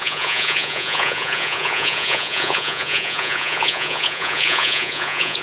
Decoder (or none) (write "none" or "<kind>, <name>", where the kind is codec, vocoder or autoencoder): vocoder, Vocos